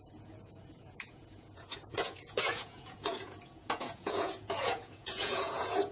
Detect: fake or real fake